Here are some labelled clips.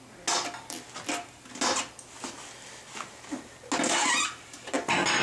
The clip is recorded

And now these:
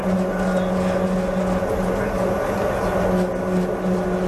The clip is recorded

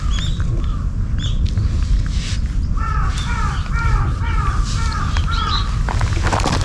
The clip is recorded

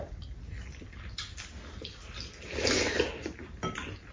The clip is recorded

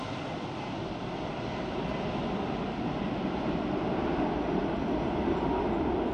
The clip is recorded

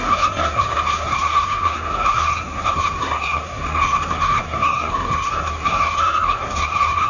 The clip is remade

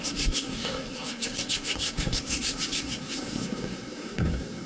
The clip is remade